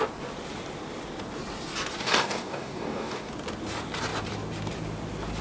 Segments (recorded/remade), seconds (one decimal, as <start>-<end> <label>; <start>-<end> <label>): 0.0-2.0 recorded; 2.0-3.3 remade; 3.3-5.4 recorded